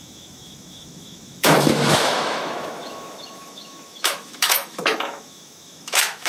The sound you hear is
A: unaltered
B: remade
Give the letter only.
B